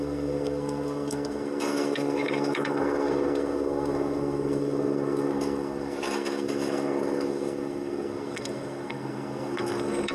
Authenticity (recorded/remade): remade